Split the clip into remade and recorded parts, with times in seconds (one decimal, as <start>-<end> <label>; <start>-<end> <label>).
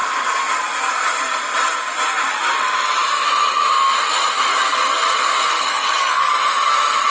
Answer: 0.0-5.5 recorded; 5.5-6.3 remade; 6.3-7.1 recorded